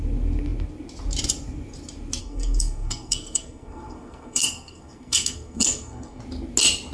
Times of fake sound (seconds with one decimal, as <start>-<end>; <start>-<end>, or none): 2.2-6.2